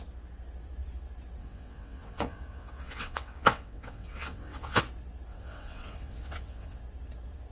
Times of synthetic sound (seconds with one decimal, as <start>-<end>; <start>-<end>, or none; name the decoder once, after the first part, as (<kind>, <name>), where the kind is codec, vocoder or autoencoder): 1.4-4.8 (vocoder, WaveNeXt); 5.3-6.8